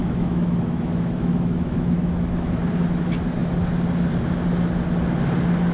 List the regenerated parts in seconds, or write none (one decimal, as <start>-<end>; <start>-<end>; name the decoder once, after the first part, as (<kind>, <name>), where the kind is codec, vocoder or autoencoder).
0.0-2.6 (autoencoder, DAC-VAE)